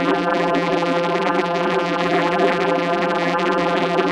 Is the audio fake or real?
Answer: fake